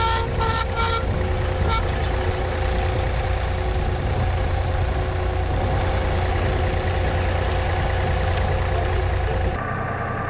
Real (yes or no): yes